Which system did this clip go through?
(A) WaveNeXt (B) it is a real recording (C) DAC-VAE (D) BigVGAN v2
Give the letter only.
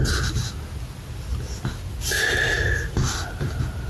B